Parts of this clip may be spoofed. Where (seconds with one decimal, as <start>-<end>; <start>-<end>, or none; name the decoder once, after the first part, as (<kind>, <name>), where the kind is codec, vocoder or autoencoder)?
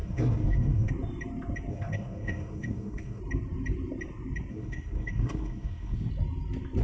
0.0-0.9 (codec, SNAC); 1.7-3.2; 4.5-6.1